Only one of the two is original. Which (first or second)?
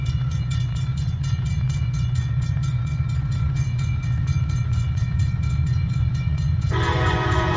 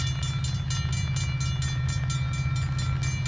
second